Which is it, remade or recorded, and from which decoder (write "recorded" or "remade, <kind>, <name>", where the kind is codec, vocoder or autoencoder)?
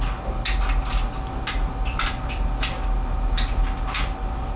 recorded